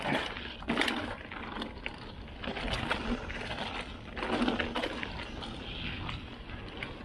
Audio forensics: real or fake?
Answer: real